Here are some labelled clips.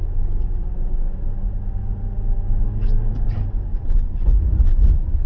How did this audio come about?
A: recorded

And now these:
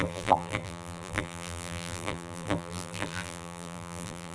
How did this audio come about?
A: remade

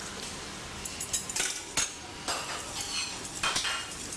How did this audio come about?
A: recorded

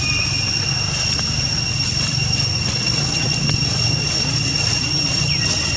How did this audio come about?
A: recorded